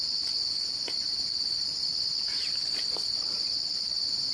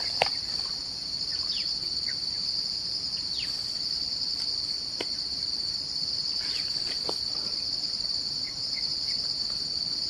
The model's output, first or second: second